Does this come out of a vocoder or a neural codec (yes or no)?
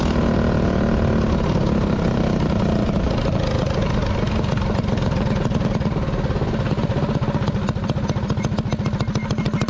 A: no